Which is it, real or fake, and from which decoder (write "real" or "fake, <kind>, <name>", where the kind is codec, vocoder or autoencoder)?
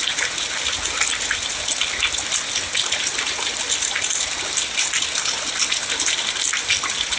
real